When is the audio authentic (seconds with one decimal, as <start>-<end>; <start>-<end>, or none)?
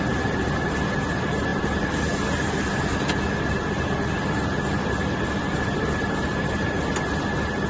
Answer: 0.0-7.7